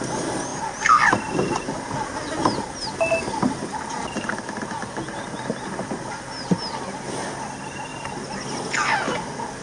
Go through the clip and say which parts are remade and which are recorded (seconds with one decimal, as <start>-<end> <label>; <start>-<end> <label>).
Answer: 0.0-9.6 recorded